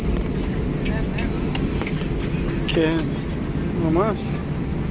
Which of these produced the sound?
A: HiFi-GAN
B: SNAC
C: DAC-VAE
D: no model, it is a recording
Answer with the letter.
D